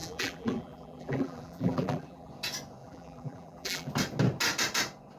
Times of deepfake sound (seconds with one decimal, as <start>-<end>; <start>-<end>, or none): 0.0-2.3; 2.8-3.9